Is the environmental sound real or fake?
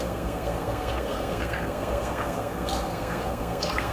fake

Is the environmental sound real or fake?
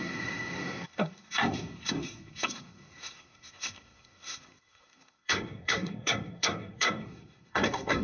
fake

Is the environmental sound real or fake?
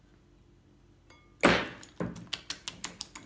real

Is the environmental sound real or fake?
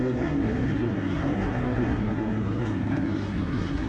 fake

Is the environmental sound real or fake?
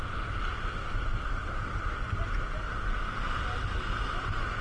real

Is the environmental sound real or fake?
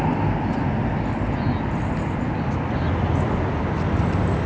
real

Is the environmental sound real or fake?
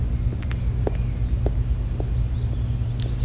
real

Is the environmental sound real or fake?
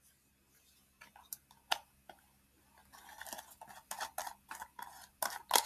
real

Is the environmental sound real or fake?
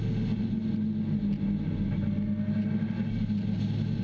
real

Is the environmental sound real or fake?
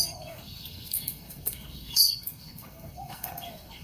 fake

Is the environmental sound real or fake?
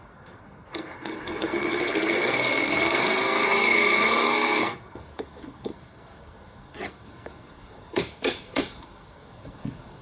fake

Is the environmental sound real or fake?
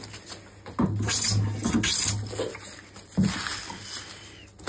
real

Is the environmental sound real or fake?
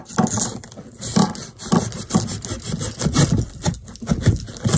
real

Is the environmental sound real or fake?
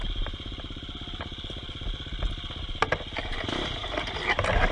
real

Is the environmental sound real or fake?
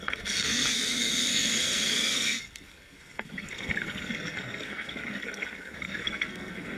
fake